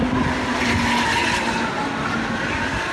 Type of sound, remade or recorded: recorded